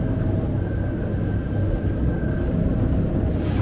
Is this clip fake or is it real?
real